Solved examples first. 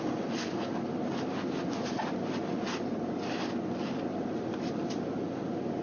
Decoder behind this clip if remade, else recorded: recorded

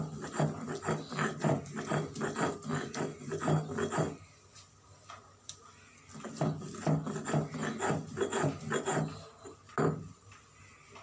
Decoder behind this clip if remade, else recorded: recorded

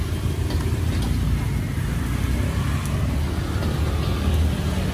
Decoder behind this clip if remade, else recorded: recorded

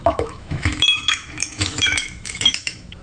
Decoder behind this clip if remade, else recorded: remade, autoencoder, DAC-VAE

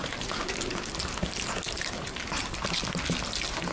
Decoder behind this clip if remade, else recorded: recorded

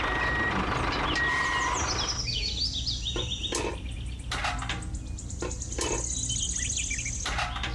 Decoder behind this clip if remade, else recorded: recorded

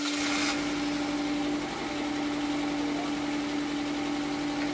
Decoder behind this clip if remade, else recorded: recorded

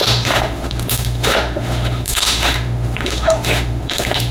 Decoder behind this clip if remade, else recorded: remade, autoencoder, DAC-VAE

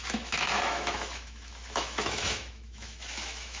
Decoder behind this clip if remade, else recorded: remade, autoencoder, DAC-VAE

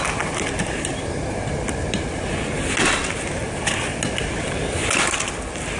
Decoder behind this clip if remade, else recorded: recorded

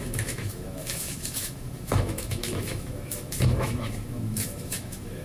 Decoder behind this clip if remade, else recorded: remade, autoencoder, DAC-VAE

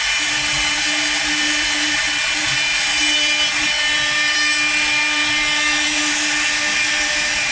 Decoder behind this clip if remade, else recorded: recorded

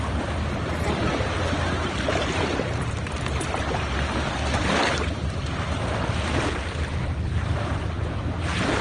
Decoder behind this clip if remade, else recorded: recorded